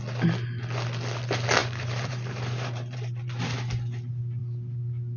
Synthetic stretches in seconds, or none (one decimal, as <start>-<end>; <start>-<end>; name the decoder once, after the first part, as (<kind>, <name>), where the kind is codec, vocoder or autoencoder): 1.6-3.4 (vocoder, BigVGAN v2)